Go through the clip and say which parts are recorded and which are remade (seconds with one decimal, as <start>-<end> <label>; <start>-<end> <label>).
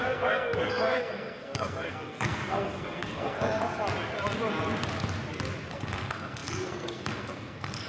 0.0-3.7 remade; 3.7-5.7 recorded; 5.7-7.9 remade